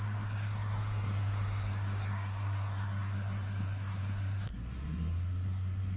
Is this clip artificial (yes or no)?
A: yes